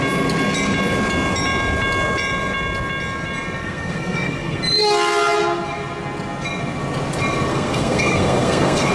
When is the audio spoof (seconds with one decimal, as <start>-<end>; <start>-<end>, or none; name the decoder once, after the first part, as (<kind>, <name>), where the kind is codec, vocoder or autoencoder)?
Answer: 3.6-4.6 (codec, SNAC); 7.5-8.9